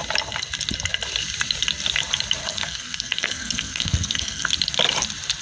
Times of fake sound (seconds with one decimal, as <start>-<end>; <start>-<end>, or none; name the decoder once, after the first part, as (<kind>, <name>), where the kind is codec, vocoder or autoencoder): 2.4-4.5 (codec, SNAC)